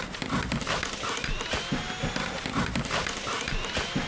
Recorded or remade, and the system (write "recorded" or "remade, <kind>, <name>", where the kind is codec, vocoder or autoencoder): recorded